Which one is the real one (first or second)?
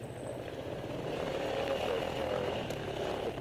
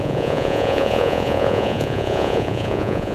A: first